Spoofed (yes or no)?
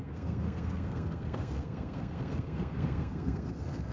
yes